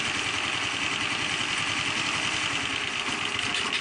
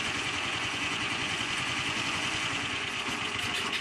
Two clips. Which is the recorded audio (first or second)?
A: first